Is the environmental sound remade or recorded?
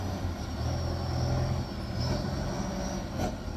recorded